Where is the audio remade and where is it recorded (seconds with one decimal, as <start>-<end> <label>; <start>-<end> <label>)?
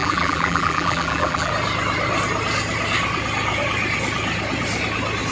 0.0-1.5 remade; 1.5-5.3 recorded